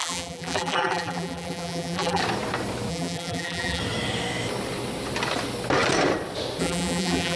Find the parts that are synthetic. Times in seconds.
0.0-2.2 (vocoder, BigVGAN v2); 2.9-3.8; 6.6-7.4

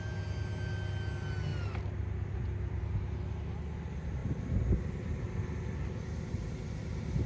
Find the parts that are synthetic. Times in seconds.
none

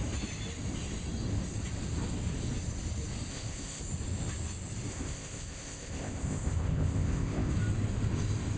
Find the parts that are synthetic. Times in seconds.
3.3-3.8 (codec, ZipCodec); 4.9-7.5